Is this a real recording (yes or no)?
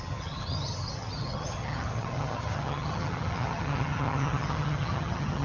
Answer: no